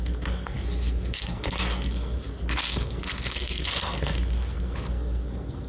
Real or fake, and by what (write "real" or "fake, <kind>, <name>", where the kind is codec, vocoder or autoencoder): fake, codec, SNAC